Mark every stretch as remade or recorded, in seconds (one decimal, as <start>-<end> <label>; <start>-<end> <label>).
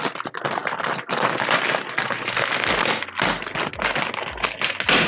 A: 0.0-5.1 recorded